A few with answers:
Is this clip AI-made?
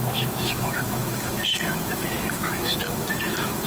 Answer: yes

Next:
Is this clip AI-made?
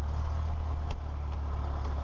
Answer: no